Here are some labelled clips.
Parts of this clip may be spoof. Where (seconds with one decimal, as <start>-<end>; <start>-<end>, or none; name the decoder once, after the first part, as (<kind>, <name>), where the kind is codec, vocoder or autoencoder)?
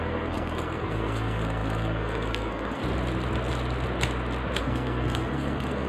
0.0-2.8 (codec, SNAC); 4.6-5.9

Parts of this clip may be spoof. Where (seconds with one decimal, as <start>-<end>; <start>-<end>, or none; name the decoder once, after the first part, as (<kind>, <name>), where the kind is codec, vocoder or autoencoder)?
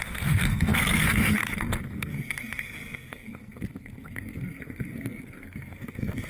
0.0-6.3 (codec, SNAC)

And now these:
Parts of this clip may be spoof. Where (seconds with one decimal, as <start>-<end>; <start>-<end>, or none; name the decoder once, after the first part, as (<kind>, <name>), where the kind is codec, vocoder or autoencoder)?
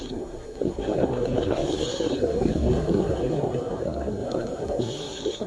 0.0-5.5 (codec, SNAC)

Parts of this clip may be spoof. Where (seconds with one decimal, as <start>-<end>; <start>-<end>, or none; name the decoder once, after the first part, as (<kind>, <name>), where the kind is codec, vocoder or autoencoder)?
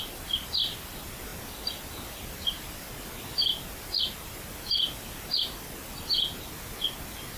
none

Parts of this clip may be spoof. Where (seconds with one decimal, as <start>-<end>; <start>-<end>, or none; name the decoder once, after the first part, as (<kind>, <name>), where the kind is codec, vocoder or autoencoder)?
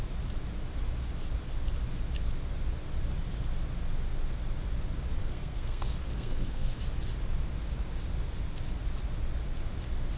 5.2-6.8 (codec, SNAC)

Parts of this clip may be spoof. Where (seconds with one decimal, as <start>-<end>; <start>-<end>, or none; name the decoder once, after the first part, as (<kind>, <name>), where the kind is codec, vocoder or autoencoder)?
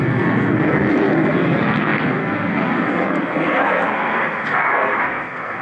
0.0-5.6 (codec, SNAC)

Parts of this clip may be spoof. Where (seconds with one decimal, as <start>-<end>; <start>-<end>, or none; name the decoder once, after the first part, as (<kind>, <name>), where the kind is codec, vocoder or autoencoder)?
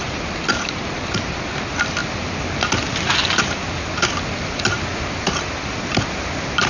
none